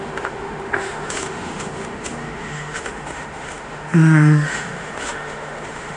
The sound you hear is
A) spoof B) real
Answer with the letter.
A